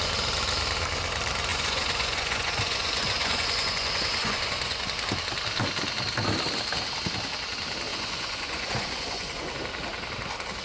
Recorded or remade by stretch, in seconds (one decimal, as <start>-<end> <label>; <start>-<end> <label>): 0.0-1.5 recorded; 1.5-4.8 remade; 4.8-7.9 recorded; 7.9-9.5 remade; 9.5-10.6 recorded